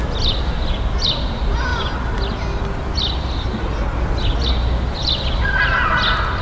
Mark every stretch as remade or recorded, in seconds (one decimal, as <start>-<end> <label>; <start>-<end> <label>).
0.0-6.4 recorded